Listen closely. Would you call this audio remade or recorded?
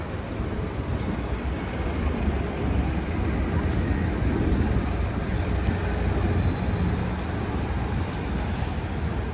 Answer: recorded